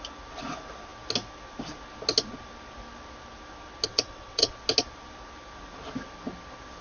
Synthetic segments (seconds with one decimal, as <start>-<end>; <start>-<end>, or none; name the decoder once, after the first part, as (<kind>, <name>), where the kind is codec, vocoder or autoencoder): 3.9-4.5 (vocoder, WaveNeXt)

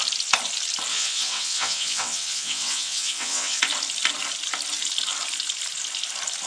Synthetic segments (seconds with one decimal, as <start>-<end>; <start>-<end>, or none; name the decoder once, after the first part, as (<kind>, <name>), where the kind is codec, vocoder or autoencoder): 0.9-3.6 (vocoder, WaveNeXt)

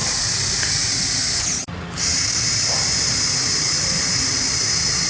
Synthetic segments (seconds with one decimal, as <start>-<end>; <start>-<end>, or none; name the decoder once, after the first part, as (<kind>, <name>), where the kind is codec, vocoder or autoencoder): none

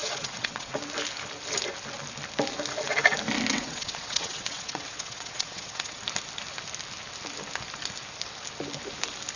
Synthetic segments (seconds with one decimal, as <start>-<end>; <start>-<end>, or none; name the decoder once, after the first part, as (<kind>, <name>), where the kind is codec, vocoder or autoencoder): 0.0-0.8 (vocoder, WaveNeXt); 3.5-6.0

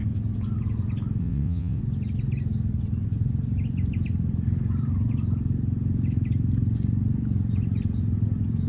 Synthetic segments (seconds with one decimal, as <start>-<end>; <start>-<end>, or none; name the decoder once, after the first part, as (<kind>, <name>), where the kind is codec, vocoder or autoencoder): 1.2-1.8 (vocoder, WaveNeXt)

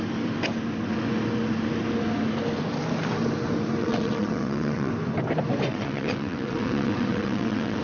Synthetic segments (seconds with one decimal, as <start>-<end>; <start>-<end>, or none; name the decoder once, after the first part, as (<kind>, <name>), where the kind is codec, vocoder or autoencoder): 3.8-4.9 (vocoder, WaveNeXt); 5.7-7.8

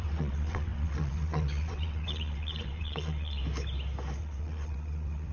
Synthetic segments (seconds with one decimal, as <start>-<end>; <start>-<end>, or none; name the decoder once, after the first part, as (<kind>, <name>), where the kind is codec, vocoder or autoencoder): 0.0-3.4 (vocoder, WaveNeXt); 4.2-5.3